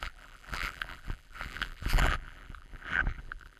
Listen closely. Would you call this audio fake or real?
fake